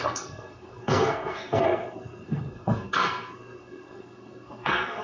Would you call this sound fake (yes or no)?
yes